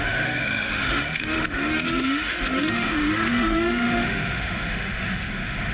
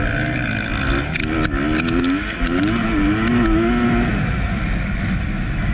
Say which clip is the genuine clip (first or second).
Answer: second